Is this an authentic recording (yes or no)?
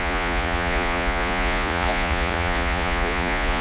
no